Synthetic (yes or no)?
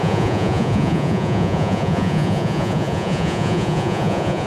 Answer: yes